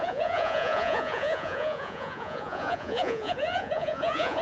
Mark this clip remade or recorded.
remade